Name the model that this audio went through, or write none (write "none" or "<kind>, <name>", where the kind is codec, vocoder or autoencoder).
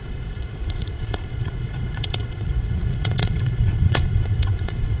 vocoder, Vocos